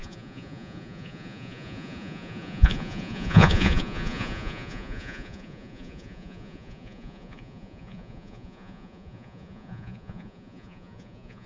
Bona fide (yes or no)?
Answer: no